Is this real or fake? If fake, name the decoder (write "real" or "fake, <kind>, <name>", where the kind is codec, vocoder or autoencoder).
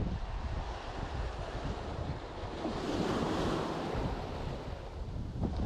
real